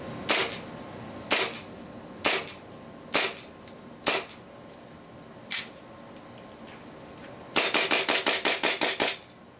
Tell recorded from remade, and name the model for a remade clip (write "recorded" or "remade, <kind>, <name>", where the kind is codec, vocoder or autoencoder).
recorded